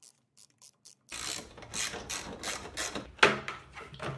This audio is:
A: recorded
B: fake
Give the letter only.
A